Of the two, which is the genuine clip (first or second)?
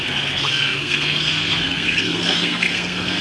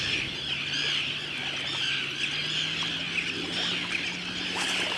second